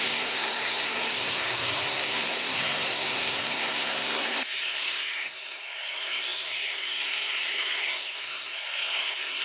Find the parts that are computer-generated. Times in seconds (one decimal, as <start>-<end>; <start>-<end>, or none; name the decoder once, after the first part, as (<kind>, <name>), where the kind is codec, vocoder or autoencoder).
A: 0.0-9.4 (codec, SNAC)